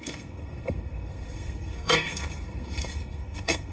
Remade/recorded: remade